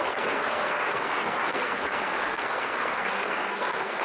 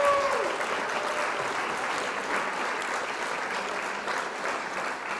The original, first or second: second